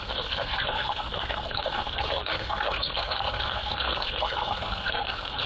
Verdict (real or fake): fake